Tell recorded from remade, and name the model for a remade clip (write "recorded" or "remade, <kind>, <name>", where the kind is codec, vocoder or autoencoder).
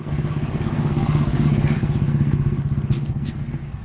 remade, codec, SNAC